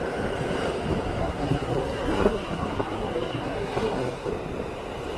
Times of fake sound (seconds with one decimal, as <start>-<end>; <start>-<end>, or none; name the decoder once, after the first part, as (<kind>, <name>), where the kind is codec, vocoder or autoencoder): 1.2-4.3 (codec, SNAC)